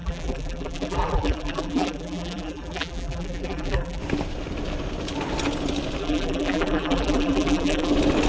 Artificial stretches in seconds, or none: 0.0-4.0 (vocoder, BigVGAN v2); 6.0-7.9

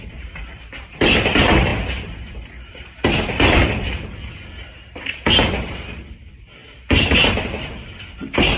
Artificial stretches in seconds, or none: 0.0-8.6 (vocoder, BigVGAN v2)

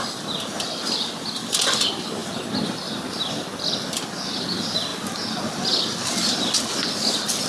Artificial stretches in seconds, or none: none